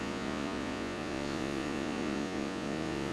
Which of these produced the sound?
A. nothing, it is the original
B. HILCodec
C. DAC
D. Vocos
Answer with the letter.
D